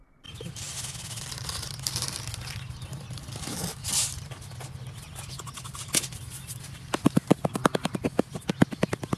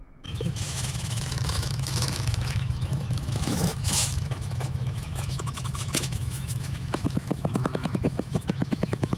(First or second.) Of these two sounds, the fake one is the second